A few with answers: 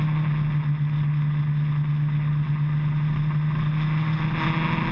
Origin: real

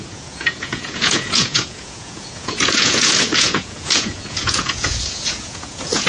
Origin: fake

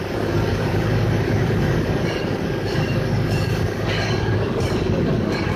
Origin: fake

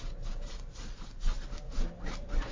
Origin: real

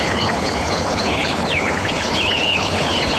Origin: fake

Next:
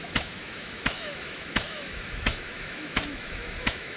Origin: fake